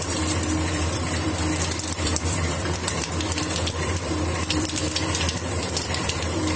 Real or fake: fake